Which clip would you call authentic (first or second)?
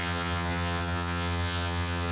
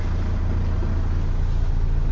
second